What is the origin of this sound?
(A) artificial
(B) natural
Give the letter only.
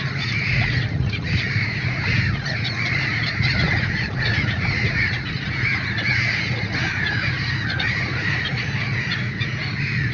A